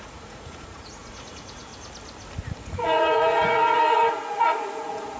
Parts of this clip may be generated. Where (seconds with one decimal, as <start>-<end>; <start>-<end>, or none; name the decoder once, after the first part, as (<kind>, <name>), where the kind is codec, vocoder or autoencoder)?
0.0-1.7 (vocoder, Vocos); 2.6-5.2